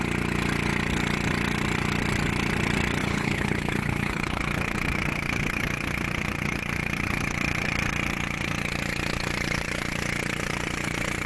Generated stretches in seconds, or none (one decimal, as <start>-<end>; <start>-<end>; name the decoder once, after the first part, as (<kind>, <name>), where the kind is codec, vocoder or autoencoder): 3.0-4.4 (codec, HILCodec)